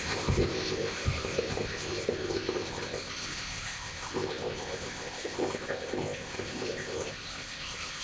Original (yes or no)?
no